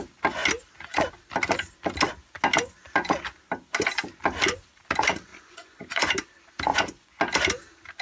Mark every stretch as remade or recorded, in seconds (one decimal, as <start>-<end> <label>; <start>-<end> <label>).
0.0-5.3 recorded; 5.3-6.1 remade; 6.1-6.7 recorded; 6.7-7.2 remade; 7.2-8.0 recorded